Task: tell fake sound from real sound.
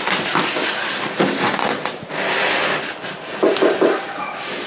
real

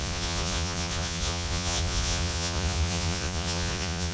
fake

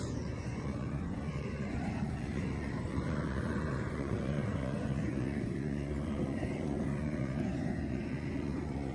fake